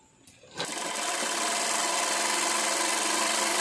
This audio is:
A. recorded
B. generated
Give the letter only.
A